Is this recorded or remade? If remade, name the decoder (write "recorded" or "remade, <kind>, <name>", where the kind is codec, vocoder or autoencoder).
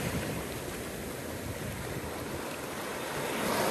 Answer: recorded